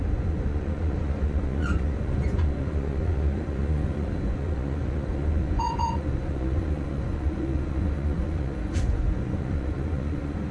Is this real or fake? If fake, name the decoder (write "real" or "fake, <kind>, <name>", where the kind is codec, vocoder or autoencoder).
fake, vocoder, Vocos